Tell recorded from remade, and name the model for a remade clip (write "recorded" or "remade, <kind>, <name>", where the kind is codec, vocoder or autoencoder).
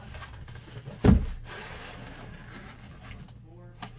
recorded